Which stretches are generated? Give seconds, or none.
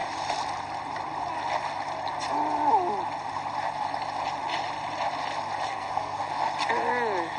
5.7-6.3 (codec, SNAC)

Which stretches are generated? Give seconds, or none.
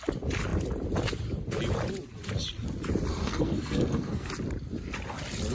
3.1-4.3 (codec, SNAC)